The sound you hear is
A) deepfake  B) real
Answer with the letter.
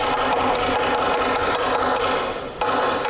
B